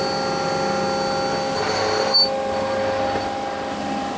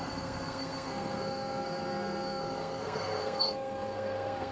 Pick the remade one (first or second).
second